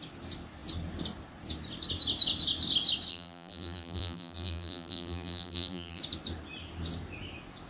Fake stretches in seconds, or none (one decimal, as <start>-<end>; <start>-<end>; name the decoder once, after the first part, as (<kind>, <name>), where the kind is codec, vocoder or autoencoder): 3.1-6.0 (vocoder, BigVGAN v2)